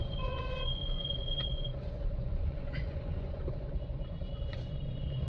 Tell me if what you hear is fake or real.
fake